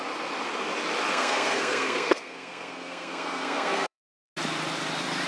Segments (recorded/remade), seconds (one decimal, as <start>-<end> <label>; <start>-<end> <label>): 0.0-1.1 recorded; 1.1-4.3 remade; 4.3-5.3 recorded